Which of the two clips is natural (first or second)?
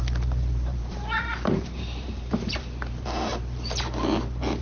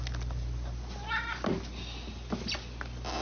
second